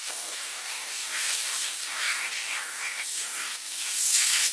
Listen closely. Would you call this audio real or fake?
fake